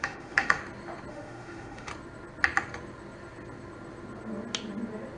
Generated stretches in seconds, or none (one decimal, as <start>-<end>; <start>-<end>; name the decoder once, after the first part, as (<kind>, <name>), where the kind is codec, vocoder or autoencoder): 0.0-0.6 (autoencoder, DAC-VAE); 1.1-1.9